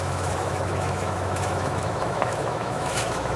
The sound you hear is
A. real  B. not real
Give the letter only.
B